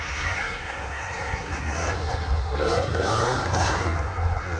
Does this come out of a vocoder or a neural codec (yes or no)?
yes